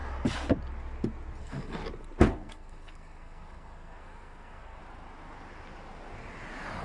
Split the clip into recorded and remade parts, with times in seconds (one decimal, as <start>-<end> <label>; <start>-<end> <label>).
0.0-1.4 recorded; 1.4-1.8 remade; 1.8-2.3 recorded; 2.3-4.8 remade; 4.8-6.8 recorded